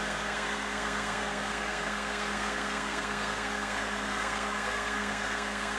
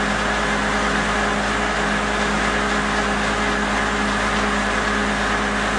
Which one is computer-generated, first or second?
first